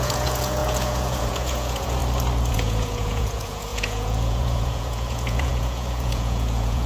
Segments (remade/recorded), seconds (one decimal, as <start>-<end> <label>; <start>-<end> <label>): 0.0-2.0 remade; 2.0-2.5 recorded; 2.5-6.9 remade